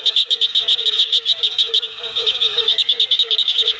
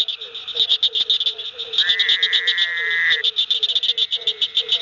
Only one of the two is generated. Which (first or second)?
first